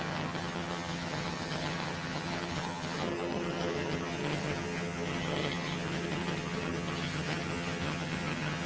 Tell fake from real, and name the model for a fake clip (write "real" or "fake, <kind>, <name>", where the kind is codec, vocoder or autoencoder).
fake, vocoder, HiFi-GAN